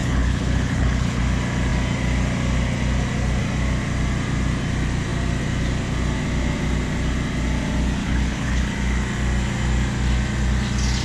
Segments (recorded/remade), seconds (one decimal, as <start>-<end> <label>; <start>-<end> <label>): 0.0-1.2 remade; 1.2-8.0 recorded; 8.0-8.6 remade; 8.6-11.0 recorded